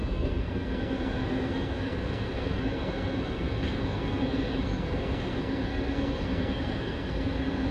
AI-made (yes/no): yes